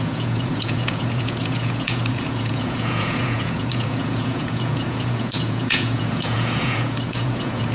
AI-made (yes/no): yes